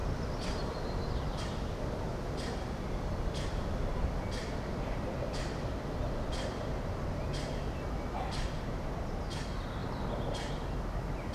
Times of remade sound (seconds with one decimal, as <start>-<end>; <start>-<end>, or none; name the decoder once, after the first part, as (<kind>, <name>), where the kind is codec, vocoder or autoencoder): none